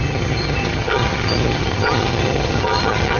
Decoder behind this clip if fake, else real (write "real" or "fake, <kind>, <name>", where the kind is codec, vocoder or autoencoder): fake, vocoder, HiFi-GAN